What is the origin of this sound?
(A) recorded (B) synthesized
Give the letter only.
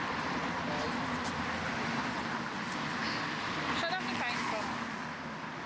A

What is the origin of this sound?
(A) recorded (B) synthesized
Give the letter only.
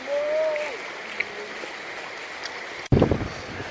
A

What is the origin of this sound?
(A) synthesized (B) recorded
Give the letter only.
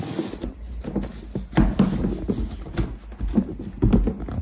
B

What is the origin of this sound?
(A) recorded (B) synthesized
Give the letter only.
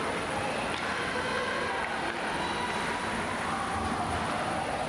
A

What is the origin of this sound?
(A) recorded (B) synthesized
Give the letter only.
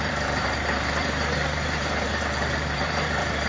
B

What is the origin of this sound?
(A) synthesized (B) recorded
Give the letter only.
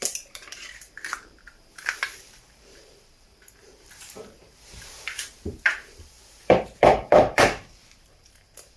A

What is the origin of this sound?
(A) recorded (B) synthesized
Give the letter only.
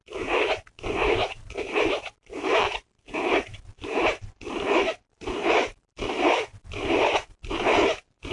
B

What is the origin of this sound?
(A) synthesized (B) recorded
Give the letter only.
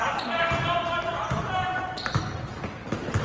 B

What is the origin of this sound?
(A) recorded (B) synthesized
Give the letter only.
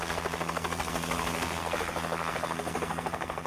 B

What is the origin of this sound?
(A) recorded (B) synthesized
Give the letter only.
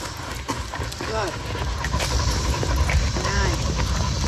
A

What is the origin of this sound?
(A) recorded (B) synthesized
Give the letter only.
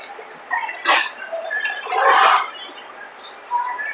A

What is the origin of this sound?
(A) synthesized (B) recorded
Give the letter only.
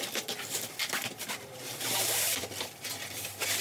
A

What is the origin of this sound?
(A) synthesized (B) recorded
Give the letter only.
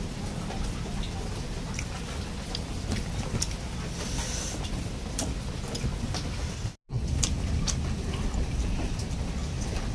B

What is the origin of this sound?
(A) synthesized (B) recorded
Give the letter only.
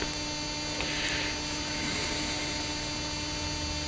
B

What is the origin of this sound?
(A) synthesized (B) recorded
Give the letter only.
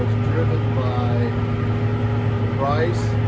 B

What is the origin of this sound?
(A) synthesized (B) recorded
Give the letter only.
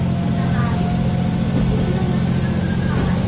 B